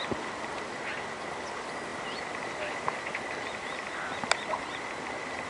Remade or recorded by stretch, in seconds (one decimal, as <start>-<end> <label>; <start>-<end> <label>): 0.0-5.5 recorded

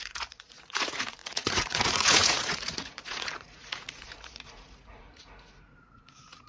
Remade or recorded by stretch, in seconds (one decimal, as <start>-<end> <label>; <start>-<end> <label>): 0.0-6.5 remade

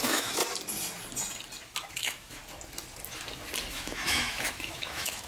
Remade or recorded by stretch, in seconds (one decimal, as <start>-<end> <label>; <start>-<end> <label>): 0.0-0.4 remade; 0.4-1.9 recorded; 1.9-2.4 remade; 2.4-3.7 recorded; 3.7-5.3 remade